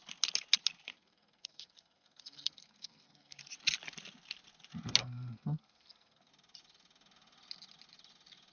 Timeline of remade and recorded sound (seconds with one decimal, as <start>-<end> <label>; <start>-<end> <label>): 0.0-0.9 recorded; 0.9-3.4 remade; 3.4-5.0 recorded; 5.0-6.3 remade; 6.3-8.5 recorded